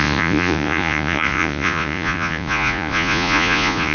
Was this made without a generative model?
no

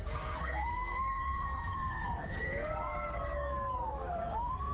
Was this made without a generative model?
no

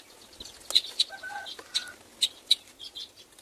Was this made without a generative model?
yes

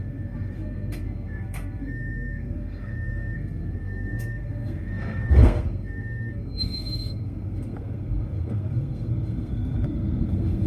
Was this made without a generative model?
no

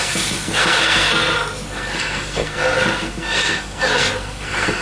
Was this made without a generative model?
no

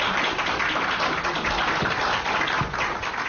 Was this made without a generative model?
yes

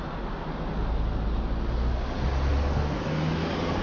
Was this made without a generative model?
yes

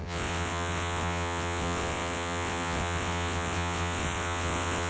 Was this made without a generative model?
no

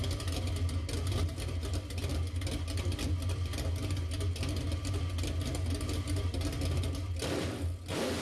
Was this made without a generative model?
yes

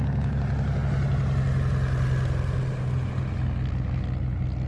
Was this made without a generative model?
yes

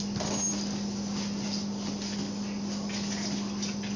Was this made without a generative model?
yes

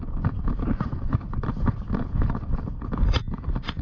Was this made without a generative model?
yes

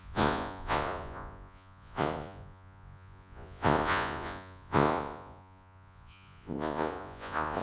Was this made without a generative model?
no